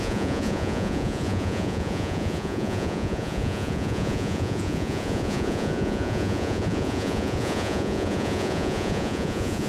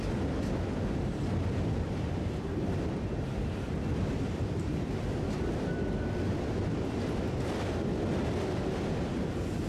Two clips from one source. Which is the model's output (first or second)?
first